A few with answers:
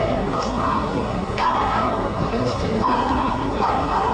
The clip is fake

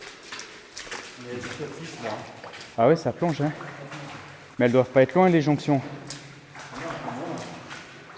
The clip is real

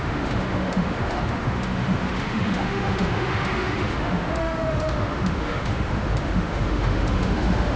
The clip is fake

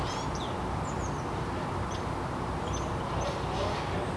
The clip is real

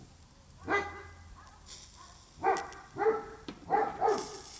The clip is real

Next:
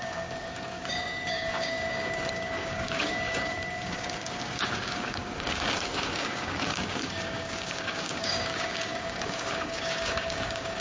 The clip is fake